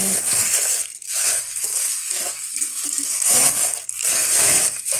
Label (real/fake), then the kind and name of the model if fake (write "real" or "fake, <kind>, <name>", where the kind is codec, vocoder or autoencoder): fake, codec, SNAC